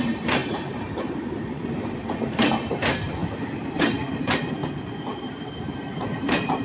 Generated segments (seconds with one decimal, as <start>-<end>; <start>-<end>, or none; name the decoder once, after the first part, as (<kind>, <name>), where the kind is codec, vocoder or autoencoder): 0.0-3.2 (vocoder, BigVGAN v2); 3.8-4.6; 5.2-6.6